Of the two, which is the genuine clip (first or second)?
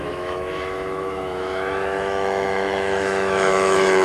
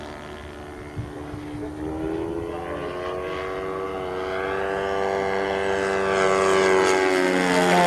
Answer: second